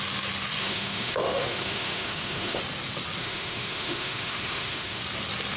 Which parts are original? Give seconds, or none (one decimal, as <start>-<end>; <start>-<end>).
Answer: 0.0-0.6; 2.6-3.2; 5.0-5.6